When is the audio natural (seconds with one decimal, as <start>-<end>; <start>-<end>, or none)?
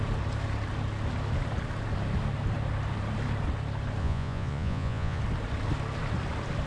0.0-4.0; 5.2-6.7